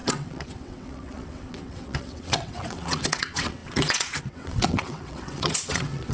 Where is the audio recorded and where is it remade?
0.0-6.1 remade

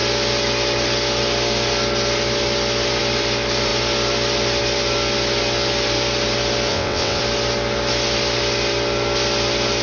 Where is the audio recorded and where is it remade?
0.0-6.7 recorded; 6.7-7.2 remade; 7.2-9.8 recorded

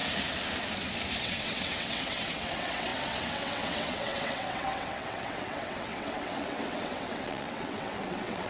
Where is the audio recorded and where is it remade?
0.0-1.2 recorded; 1.2-8.5 remade